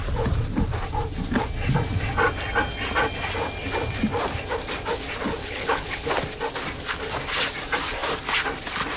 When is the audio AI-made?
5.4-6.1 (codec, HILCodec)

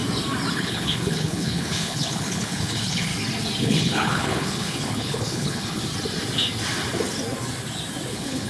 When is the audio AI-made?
0.5-3.1 (codec, HILCodec); 3.6-5.8; 8.1-8.5

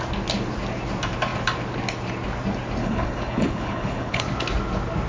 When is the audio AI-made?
2.8-4.2 (codec, HILCodec)

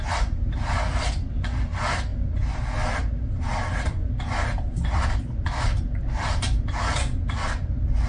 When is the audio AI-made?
none